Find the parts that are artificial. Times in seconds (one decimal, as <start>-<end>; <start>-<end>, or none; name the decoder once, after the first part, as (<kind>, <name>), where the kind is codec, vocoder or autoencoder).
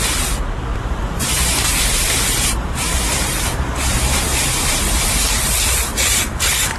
0.7-4.8 (vocoder, BigVGAN v2); 5.9-6.8